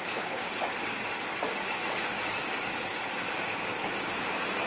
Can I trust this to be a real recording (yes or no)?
no